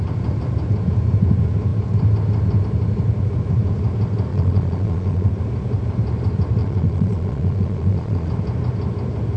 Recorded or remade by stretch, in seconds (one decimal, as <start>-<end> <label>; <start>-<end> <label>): 0.0-4.3 recorded; 4.3-5.3 remade; 5.3-6.6 recorded; 6.6-8.3 remade; 8.3-9.4 recorded